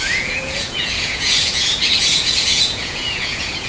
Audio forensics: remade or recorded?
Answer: remade